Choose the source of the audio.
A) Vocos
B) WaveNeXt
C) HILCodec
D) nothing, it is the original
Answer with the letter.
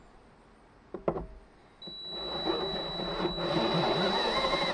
D